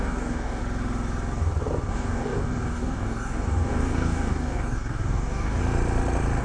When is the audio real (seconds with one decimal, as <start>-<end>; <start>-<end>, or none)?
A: 0.6-1.9; 5.6-6.4